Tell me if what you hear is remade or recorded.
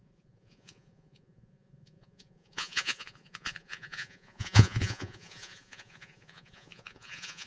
remade